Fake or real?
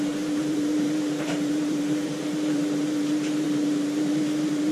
fake